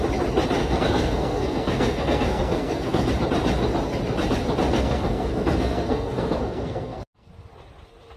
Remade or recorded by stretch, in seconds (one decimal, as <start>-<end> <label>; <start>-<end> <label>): 0.0-0.6 recorded; 0.6-3.1 remade; 3.1-4.7 recorded; 4.7-7.3 remade; 7.3-8.2 recorded